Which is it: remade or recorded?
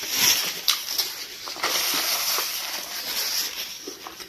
remade